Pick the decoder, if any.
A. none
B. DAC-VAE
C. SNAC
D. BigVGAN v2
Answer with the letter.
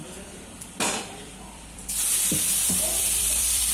D